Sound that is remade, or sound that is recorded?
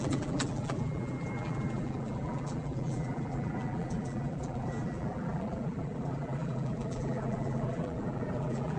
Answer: remade